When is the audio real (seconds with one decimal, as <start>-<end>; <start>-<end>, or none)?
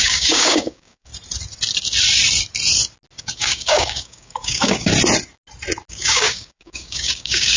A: 1.1-3.2; 4.9-5.9